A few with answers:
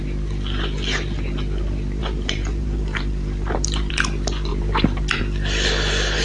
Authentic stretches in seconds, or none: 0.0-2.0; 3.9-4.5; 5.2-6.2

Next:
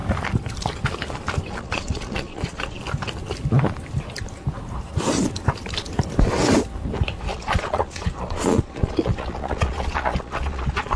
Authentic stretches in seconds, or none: 0.0-1.5; 2.8-7.3

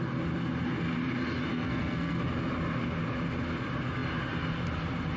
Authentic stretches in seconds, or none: 0.0-1.5; 2.2-5.2

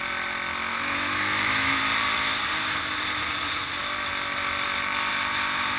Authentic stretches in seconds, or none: 0.0-0.7; 1.8-5.8

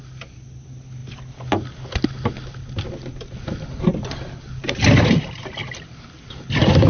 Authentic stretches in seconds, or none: 0.0-6.9

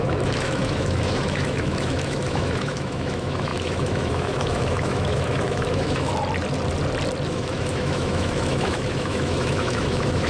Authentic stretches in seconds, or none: 6.1-7.3

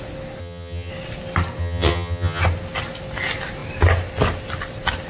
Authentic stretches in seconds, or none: 0.0-0.4; 0.9-1.6; 2.4-5.1

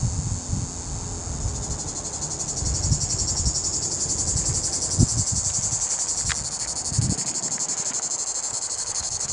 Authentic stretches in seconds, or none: 0.0-8.5